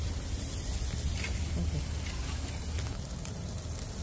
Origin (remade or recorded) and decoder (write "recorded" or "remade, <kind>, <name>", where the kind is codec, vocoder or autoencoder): recorded